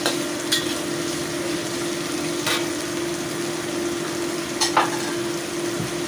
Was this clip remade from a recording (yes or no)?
yes